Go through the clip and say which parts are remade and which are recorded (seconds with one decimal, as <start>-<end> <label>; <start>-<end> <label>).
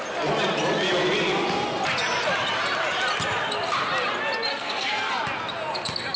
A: 0.0-4.5 recorded; 4.5-5.1 remade; 5.1-6.2 recorded